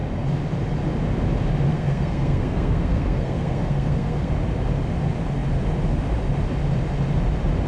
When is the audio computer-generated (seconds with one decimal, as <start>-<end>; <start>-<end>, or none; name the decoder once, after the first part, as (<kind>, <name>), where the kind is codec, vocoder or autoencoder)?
1.7-4.3 (codec, SNAC)

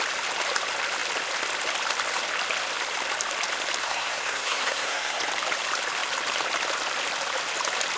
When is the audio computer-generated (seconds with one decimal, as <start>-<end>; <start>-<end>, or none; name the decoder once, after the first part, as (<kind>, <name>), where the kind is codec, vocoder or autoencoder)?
3.8-5.2 (codec, SNAC)

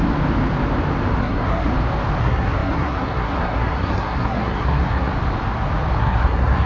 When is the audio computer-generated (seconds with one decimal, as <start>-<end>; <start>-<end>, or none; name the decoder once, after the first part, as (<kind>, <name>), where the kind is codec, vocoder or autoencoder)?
1.2-1.7 (codec, SNAC); 2.2-5.1; 6.0-6.7

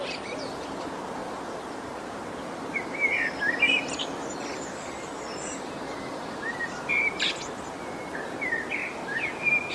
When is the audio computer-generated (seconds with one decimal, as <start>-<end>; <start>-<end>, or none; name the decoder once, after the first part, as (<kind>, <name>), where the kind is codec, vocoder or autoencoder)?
none